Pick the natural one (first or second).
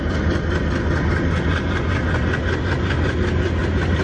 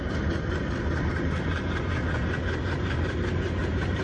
first